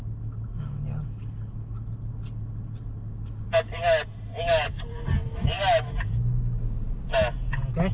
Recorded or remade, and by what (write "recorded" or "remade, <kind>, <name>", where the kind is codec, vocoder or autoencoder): recorded